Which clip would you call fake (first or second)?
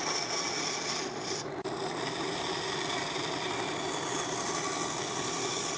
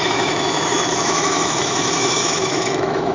second